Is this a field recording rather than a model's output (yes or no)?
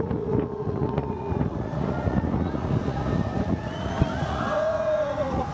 no